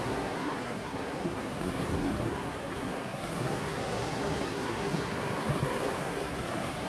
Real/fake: fake